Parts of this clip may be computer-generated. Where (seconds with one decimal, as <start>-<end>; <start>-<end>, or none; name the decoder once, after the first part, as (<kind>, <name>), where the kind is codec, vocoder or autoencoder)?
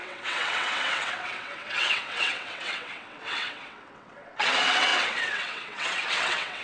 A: 0.0-6.6 (vocoder, WaveNeXt)